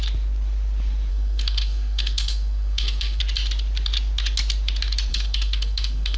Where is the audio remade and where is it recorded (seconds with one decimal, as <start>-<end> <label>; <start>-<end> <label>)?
0.0-1.1 recorded; 1.1-3.2 remade; 3.2-5.1 recorded; 5.1-6.2 remade